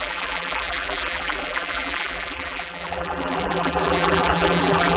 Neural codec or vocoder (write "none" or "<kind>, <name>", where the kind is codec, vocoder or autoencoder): vocoder, BigVGAN v2